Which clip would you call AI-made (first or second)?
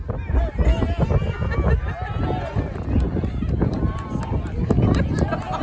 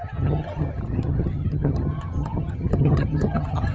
second